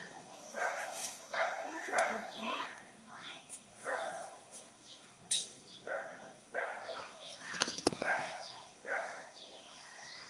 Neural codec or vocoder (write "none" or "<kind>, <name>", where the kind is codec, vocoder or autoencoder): codec, SNAC